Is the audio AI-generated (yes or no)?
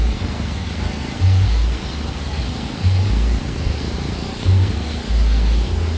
yes